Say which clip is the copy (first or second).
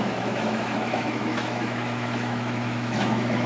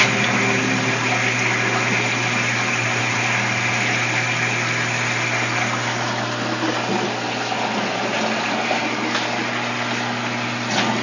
first